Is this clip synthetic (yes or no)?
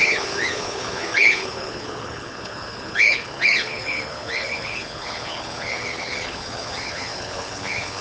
yes